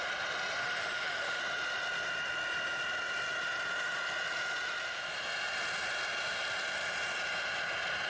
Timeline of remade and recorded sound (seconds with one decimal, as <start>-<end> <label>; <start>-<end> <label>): 0.0-0.6 recorded; 0.6-1.4 remade; 1.4-8.1 recorded